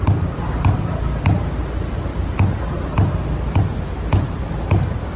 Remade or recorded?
recorded